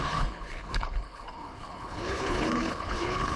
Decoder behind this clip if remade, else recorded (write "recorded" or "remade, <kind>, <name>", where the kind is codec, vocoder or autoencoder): remade, codec, HILCodec